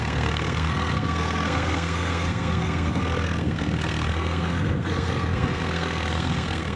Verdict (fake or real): fake